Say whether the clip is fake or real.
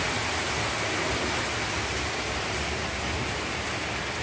real